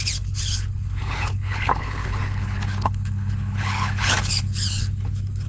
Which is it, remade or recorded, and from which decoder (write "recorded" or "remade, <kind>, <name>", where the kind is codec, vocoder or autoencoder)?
remade, codec, HILCodec